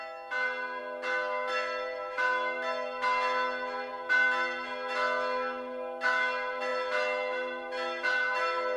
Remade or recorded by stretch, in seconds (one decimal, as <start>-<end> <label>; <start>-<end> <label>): 0.0-8.8 recorded